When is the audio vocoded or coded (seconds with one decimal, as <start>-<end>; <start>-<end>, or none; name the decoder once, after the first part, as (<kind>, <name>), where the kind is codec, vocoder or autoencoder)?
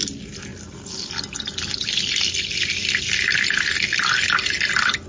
none